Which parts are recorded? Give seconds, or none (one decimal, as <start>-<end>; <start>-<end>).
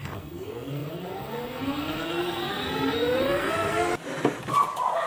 3.9-5.1